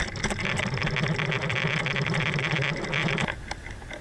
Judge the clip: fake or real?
real